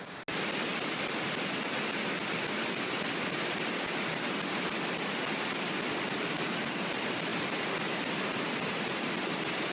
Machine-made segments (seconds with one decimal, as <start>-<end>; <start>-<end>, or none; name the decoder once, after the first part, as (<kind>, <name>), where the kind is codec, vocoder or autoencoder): none